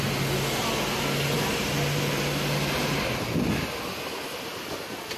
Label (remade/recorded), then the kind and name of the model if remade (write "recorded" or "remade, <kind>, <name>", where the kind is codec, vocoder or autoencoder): recorded